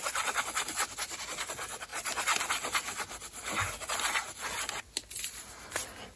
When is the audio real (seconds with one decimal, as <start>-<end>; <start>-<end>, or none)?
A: 0.0-6.2